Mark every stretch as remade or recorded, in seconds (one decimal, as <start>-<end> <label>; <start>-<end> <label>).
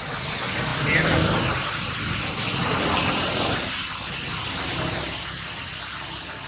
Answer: 0.0-6.5 recorded